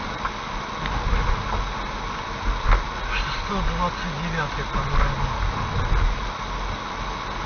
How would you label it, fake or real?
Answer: real